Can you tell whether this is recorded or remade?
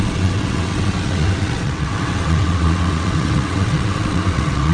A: remade